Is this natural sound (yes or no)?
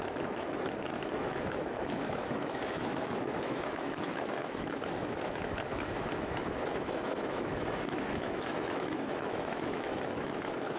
no